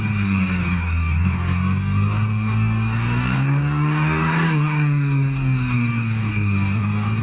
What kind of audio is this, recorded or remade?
remade